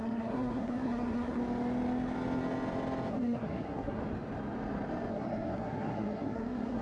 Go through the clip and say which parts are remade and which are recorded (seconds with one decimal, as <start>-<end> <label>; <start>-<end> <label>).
0.0-1.4 remade; 1.4-3.1 recorded; 3.1-4.0 remade; 4.0-5.1 recorded; 5.1-6.8 remade